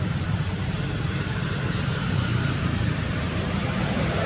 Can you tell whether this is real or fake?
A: fake